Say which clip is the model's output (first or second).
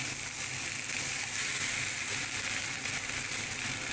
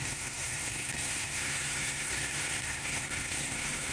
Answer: second